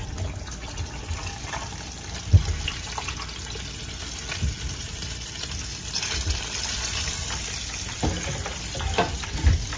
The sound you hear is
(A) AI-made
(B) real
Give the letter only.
B